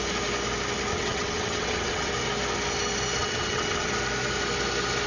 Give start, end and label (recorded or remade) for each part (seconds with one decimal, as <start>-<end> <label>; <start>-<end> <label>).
0.0-0.9 recorded; 0.9-2.1 remade; 2.1-3.2 recorded; 3.2-3.9 remade; 3.9-5.1 recorded